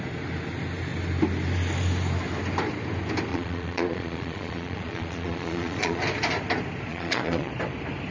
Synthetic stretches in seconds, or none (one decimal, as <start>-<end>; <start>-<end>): 3.3-6.0; 6.9-7.5